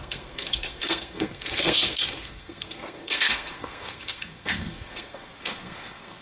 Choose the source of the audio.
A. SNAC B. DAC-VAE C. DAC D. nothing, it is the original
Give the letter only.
A